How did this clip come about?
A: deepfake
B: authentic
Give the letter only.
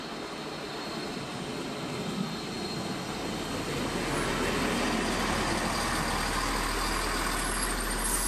B